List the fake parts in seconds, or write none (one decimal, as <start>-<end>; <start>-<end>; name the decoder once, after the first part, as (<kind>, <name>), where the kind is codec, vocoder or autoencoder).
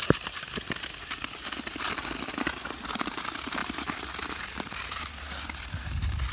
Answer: 3.6-5.3 (vocoder, BigVGAN v2)